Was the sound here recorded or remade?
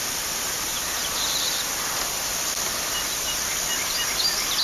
remade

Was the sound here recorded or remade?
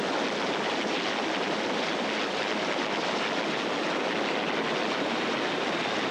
remade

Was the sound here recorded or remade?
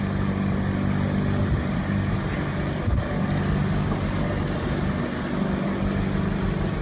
recorded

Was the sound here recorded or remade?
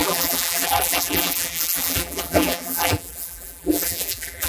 remade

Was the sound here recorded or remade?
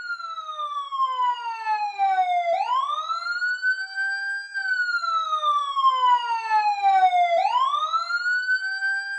recorded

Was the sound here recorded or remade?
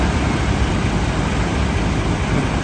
remade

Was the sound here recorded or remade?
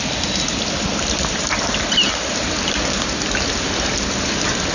recorded